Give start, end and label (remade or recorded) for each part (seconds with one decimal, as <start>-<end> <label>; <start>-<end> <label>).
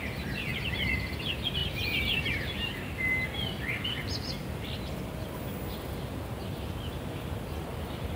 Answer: 0.0-8.2 recorded